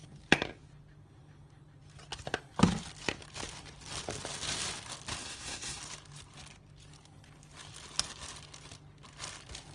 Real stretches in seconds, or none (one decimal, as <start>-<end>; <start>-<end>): 0.0-5.2; 5.8-9.7